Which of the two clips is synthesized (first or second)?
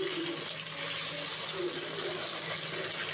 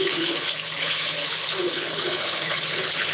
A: second